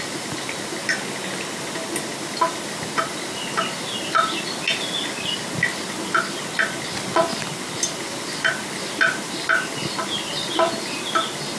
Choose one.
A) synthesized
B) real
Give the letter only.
B